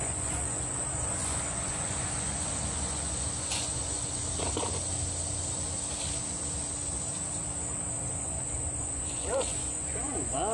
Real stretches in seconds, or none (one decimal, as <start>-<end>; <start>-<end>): 4.2-8.1